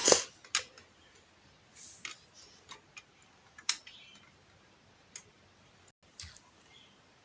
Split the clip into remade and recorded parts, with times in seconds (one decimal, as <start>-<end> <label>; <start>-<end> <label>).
0.0-3.1 recorded; 3.1-3.8 remade; 3.8-7.2 recorded